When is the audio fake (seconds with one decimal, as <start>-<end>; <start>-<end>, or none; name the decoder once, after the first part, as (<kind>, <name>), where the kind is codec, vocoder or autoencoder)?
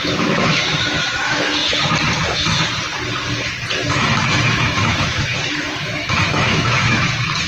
0.0-1.6 (autoencoder, DAC-VAE); 3.9-7.5